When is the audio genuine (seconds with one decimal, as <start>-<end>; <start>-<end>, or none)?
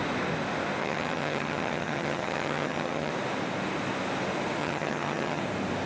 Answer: 0.0-0.8; 3.1-4.6; 5.4-5.9